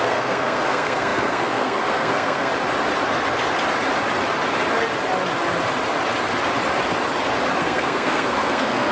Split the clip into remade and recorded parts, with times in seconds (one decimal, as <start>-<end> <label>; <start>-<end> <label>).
0.0-2.5 remade; 2.5-7.6 recorded; 7.6-8.9 remade